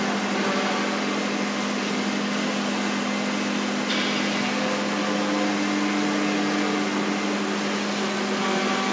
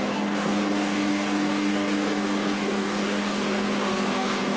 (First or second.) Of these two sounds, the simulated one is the second